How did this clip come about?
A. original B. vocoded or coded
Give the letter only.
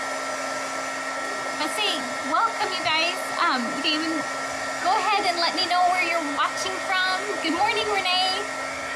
A